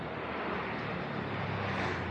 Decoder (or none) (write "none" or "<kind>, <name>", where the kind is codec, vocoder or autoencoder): none